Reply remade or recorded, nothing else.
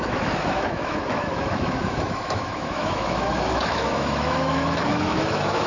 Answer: remade